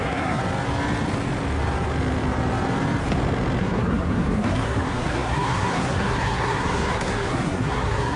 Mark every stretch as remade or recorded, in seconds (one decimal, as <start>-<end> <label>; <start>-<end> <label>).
0.0-0.4 remade; 0.4-3.6 recorded; 3.6-8.2 remade